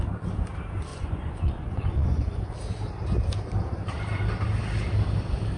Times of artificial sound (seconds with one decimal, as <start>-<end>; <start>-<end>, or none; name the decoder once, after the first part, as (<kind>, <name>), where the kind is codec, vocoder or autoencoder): 0.9-2.5 (vocoder, Vocos)